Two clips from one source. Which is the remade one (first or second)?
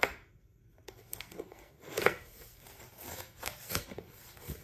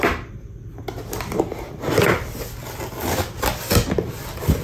first